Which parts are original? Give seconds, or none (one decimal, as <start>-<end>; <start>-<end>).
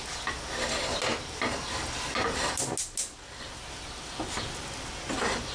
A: 0.0-5.5